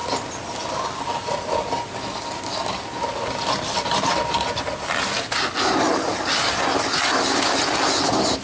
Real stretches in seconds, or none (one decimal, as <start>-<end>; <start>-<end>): 0.0-8.4